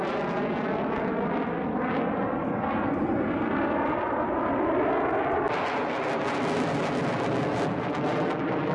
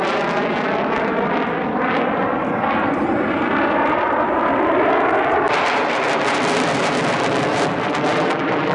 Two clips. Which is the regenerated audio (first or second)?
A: second